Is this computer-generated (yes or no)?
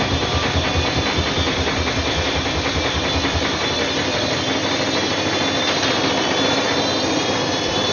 no